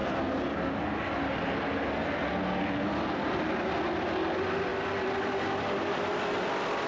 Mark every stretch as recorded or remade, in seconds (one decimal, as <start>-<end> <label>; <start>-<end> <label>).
0.0-6.9 recorded